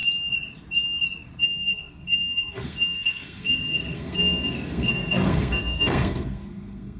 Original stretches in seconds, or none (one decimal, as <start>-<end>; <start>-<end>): 0.0-1.4